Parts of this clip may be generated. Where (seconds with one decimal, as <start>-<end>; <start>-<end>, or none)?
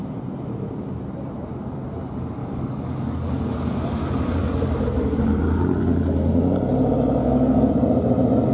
2.4-3.5; 7.2-7.7